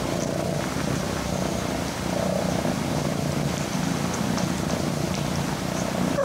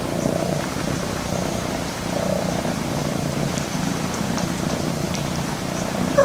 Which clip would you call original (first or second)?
first